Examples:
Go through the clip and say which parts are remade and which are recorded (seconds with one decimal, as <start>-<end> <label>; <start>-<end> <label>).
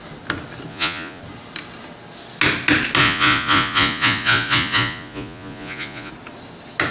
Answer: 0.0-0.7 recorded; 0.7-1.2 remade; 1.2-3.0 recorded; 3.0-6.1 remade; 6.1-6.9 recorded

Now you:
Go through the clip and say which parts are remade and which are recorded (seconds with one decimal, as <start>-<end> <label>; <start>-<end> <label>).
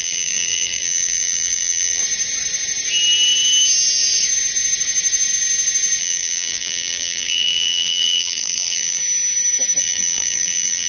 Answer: 0.0-2.0 remade; 2.0-6.0 recorded; 6.0-9.0 remade; 9.0-9.8 recorded; 9.8-10.9 remade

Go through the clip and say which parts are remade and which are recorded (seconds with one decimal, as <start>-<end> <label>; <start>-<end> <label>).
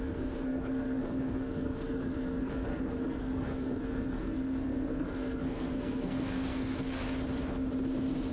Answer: 0.0-7.0 remade; 7.0-8.3 recorded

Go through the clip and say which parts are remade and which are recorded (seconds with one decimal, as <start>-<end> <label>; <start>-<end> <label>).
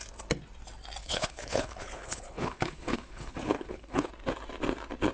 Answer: 0.0-1.0 recorded; 1.0-4.1 remade; 4.1-5.1 recorded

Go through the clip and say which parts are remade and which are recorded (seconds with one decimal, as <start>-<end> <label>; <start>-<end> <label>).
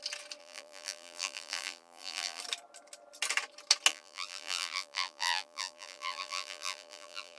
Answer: 0.0-0.4 recorded; 0.4-2.4 remade; 2.4-3.9 recorded; 3.9-7.4 remade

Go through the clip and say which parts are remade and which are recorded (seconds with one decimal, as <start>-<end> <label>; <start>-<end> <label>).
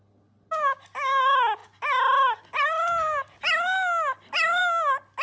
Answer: 0.0-5.2 recorded